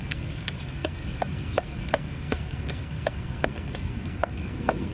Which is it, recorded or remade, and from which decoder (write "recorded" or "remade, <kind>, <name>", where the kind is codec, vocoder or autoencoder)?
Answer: remade, codec, SNAC